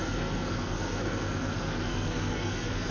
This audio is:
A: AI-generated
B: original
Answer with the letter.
A